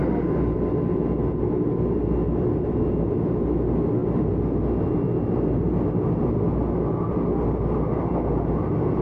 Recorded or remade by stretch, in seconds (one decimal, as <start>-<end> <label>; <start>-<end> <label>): 0.0-9.0 recorded